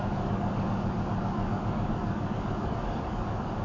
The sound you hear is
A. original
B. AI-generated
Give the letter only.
B